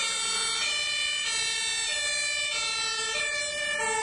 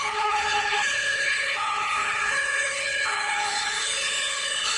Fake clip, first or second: second